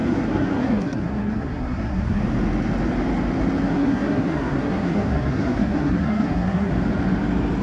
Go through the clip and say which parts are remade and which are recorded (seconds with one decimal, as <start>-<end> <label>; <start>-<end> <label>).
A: 0.0-2.2 remade; 2.2-3.7 recorded; 3.7-6.7 remade; 6.7-7.6 recorded